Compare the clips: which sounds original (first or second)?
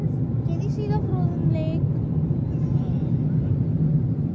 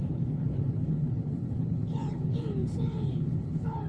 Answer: first